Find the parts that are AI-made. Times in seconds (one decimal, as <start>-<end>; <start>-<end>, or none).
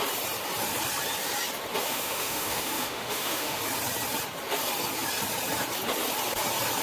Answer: 1.8-3.6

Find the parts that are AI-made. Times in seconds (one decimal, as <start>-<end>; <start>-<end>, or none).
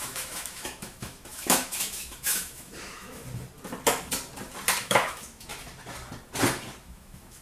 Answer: 0.0-3.2; 4.8-5.5; 6.8-7.4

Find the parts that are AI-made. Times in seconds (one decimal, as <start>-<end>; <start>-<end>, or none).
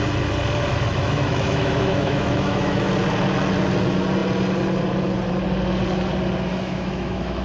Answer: 0.7-2.9; 6.5-7.4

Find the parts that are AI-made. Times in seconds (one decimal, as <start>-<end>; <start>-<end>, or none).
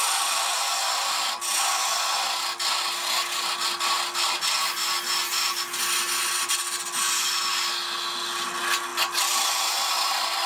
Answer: none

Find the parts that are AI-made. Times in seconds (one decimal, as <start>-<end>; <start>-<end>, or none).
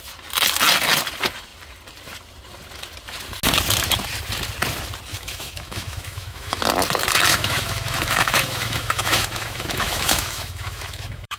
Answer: 5.1-6.6; 7.3-11.4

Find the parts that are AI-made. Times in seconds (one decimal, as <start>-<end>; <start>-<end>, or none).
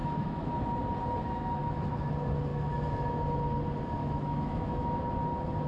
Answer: 0.0-0.5; 1.6-2.1; 2.5-3.2; 4.0-5.0